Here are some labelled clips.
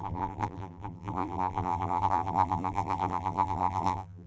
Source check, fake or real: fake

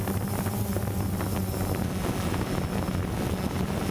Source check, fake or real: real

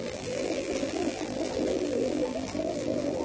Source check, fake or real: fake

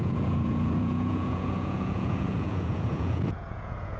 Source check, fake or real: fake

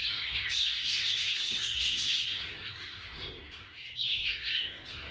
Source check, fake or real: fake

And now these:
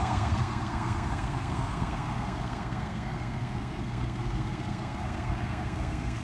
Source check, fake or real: fake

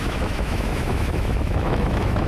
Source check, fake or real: fake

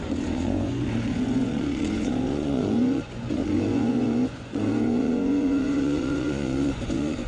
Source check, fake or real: fake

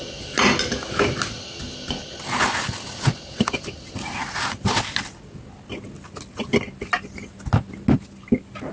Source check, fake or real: real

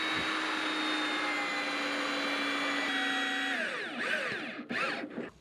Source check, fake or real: real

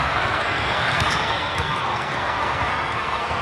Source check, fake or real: fake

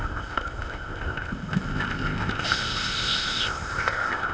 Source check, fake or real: fake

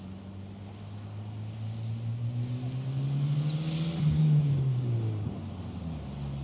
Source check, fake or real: real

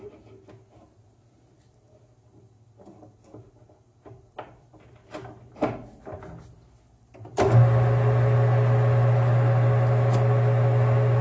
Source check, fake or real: real